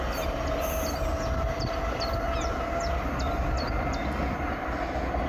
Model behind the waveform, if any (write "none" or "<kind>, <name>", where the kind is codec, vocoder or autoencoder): none